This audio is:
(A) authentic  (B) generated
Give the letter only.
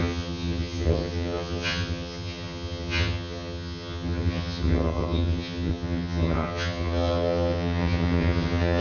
B